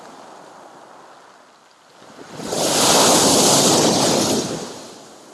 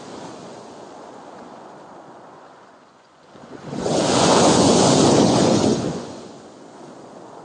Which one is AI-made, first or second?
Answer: second